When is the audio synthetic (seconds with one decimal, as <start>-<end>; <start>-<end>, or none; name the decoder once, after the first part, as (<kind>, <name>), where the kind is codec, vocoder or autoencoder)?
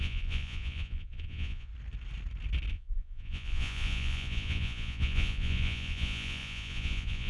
0.0-1.7 (vocoder, Vocos); 2.7-7.3